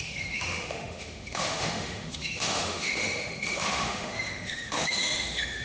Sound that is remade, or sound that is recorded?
remade